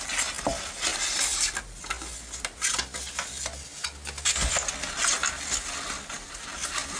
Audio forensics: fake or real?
real